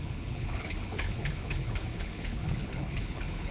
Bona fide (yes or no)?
no